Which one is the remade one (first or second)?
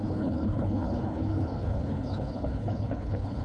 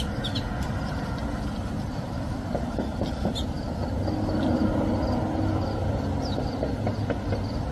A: first